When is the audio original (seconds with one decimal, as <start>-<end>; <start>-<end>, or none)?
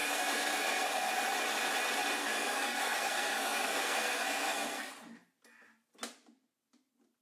1.1-2.2; 4.9-7.2